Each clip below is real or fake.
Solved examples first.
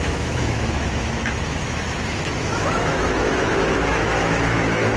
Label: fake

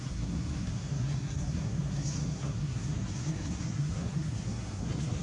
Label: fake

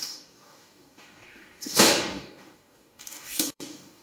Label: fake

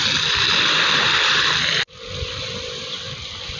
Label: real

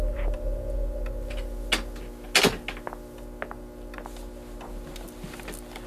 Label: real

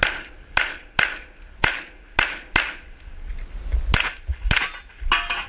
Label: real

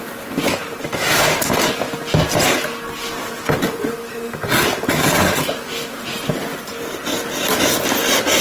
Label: real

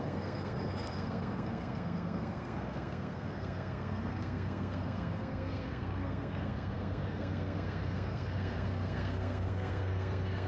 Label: fake